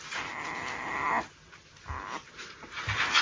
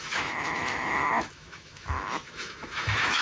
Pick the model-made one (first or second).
second